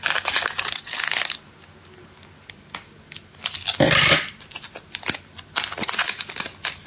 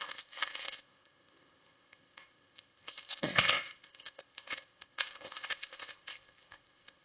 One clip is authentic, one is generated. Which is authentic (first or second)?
first